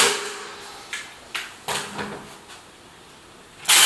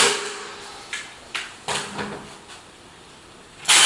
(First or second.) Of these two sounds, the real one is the first